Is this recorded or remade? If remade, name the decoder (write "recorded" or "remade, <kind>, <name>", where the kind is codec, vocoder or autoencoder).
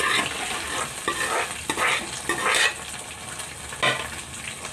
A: recorded